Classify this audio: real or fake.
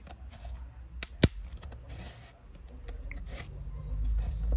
real